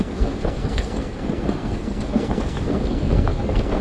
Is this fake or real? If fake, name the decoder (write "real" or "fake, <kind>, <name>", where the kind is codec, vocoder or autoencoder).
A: fake, codec, SNAC